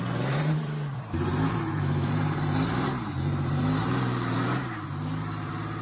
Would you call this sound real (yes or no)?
no